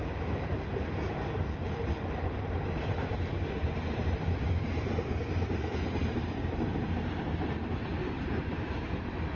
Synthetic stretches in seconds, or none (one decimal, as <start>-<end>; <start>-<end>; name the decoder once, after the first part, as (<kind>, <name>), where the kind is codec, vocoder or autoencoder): 0.0-0.5 (vocoder, BigVGAN v2); 2.2-9.4